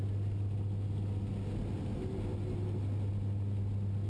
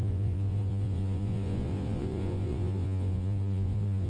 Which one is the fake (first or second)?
second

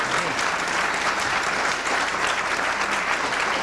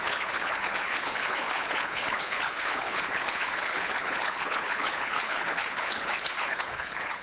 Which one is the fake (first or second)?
second